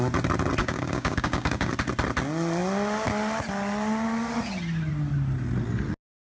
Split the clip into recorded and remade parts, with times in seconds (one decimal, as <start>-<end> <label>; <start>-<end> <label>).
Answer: 0.0-0.6 recorded; 0.6-1.7 remade; 1.7-6.3 recorded